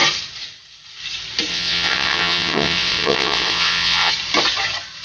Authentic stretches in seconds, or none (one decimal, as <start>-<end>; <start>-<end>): 0.0-1.5; 4.1-5.0